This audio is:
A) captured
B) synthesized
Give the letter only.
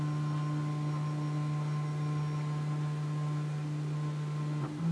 A